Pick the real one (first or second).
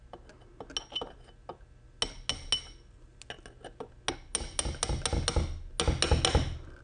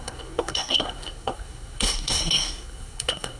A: first